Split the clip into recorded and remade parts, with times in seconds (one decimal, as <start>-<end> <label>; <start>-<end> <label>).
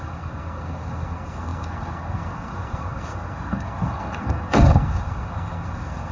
0.0-6.1 remade